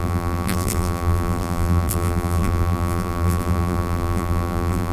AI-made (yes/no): yes